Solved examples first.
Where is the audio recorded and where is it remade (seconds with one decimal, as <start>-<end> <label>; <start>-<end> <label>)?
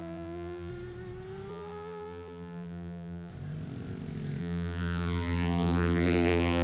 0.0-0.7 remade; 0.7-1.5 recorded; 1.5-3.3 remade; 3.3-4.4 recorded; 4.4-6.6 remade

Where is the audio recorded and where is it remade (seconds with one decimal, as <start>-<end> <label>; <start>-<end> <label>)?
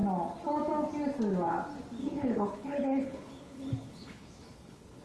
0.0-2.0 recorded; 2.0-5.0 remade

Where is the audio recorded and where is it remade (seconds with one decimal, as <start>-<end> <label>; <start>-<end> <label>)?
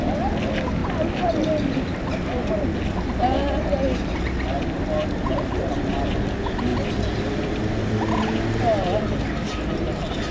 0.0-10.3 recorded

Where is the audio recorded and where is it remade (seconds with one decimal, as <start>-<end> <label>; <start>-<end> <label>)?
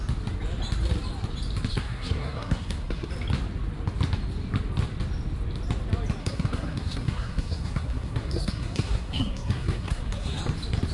0.0-1.7 recorded; 1.7-3.1 remade; 3.1-6.2 recorded; 6.2-10.4 remade; 10.4-10.9 recorded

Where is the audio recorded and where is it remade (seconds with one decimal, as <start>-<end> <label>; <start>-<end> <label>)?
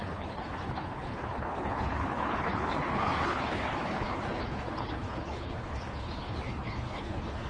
0.0-7.5 remade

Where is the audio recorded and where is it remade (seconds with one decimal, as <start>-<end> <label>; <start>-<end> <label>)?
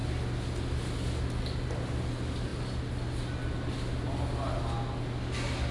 0.0-5.7 recorded